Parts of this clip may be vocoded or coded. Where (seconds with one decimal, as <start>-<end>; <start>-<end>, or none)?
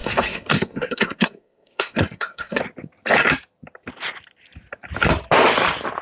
0.0-2.6